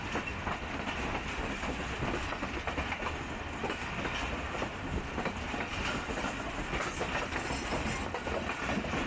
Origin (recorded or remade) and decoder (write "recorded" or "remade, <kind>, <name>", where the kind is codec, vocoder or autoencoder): recorded